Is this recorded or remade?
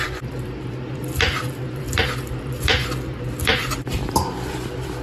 remade